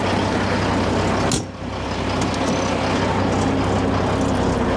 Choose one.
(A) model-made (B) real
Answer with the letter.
B